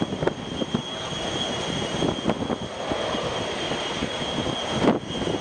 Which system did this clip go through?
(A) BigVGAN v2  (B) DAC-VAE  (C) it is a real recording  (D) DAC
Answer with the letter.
C